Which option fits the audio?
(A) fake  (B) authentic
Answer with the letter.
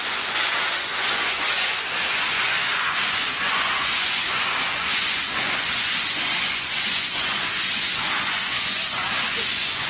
A